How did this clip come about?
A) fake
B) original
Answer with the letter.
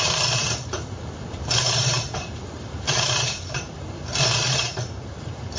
A